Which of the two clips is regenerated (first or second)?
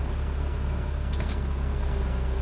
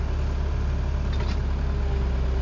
first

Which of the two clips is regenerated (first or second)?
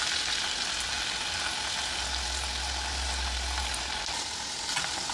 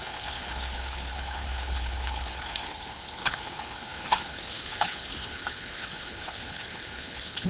second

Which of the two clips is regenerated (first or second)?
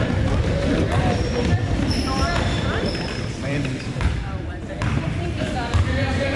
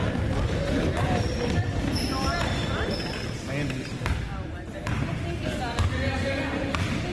first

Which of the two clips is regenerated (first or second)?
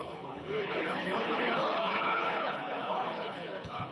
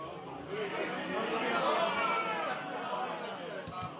first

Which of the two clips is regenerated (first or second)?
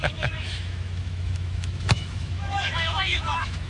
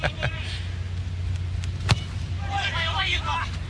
first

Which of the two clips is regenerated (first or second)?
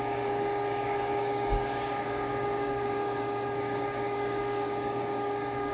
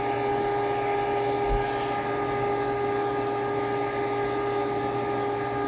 first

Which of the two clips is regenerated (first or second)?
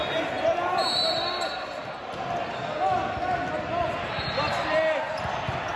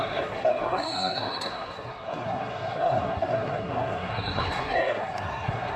second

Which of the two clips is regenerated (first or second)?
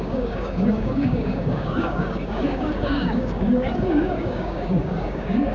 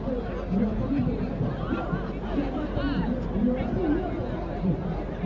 first